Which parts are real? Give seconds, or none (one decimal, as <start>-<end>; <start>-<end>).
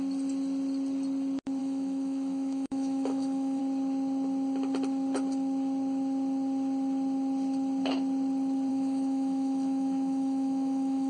0.0-1.6; 3.6-8.7